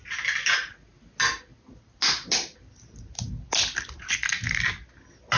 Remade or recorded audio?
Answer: recorded